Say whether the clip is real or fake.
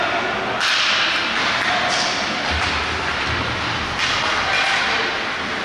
real